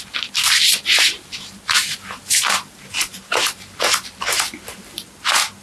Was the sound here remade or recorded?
remade